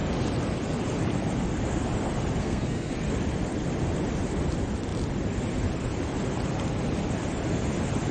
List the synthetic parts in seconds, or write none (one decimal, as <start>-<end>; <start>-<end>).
2.4-2.9